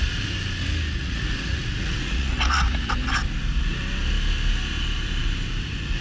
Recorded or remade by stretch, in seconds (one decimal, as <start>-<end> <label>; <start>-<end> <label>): 0.0-1.0 recorded; 1.0-2.9 remade; 2.9-6.0 recorded

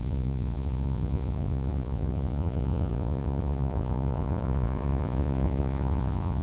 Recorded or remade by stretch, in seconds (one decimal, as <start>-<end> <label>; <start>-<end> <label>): 0.0-6.4 remade

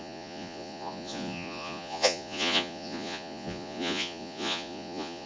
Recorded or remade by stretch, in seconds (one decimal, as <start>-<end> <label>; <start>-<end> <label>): 0.0-5.3 remade

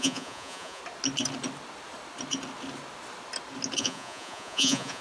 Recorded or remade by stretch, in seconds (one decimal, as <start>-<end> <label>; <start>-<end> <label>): 0.0-0.8 remade; 0.8-3.8 recorded; 3.8-5.0 remade

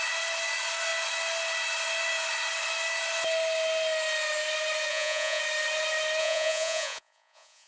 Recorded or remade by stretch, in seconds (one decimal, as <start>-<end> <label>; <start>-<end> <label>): 0.0-4.9 recorded; 4.9-5.4 remade; 5.4-6.2 recorded; 6.2-7.7 remade

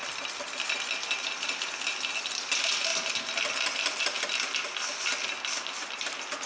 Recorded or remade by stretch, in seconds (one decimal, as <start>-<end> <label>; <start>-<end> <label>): 0.0-6.5 recorded